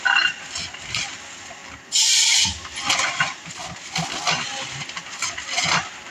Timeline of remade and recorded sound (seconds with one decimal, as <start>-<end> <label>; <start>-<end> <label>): 0.0-6.1 recorded